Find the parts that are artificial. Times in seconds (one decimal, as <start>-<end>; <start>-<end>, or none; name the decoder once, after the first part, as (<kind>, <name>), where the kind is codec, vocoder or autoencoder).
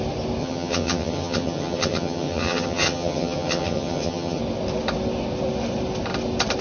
0.4-4.4 (vocoder, HiFi-GAN)